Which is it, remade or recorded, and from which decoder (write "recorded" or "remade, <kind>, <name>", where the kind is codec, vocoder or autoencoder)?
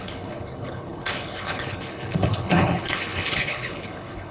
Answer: remade, codec, HILCodec